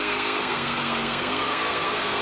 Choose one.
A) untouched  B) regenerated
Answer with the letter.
B